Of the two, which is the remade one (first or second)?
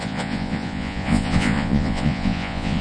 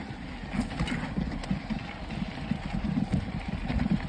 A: first